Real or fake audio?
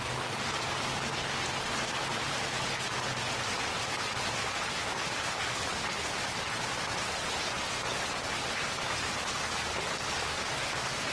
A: real